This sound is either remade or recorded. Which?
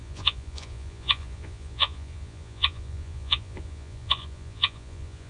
remade